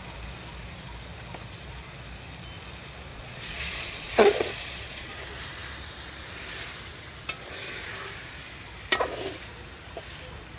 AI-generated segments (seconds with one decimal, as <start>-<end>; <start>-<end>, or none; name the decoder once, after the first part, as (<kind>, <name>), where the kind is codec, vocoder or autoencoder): 3.1-5.1 (vocoder, Vocos)

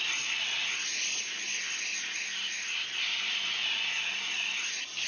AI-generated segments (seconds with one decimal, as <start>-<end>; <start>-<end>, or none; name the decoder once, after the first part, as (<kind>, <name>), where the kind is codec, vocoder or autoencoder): none

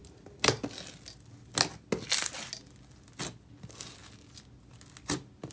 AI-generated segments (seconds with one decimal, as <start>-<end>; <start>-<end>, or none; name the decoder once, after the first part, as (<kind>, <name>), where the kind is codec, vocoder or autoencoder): none

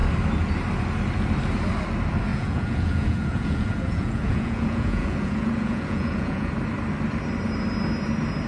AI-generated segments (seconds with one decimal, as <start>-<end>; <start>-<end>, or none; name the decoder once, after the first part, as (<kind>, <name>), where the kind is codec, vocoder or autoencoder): 2.3-6.5 (vocoder, Vocos)

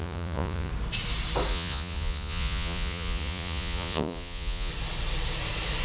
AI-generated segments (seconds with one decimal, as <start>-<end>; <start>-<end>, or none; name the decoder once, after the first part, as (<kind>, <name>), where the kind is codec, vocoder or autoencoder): 0.0-0.7 (vocoder, Vocos); 1.5-4.7

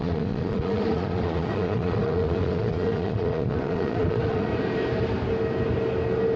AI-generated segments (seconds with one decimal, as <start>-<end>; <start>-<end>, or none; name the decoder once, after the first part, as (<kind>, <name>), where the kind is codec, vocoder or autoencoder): 0.0-4.5 (vocoder, Vocos)

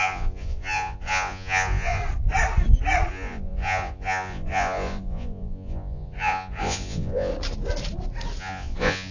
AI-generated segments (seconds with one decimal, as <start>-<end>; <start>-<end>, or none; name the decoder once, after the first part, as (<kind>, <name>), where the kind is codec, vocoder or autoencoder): 0.0-2.0 (vocoder, Vocos); 3.1-7.3; 8.4-9.1

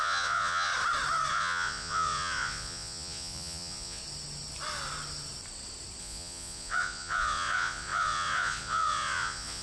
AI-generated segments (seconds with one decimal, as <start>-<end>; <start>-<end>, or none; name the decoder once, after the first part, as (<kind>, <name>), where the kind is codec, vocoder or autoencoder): 0.0-0.7 (vocoder, Vocos); 1.3-4.0; 6.0-9.6